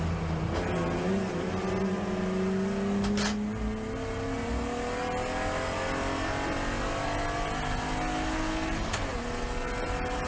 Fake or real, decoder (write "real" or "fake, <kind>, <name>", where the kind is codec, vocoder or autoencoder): real